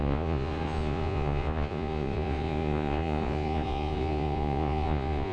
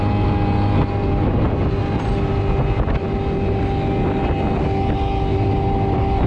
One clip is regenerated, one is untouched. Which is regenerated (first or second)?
first